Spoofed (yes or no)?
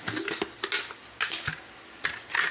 no